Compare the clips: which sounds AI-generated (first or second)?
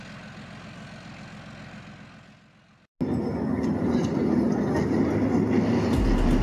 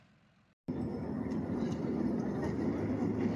second